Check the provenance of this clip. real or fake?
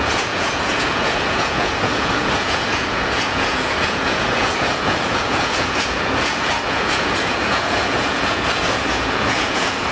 fake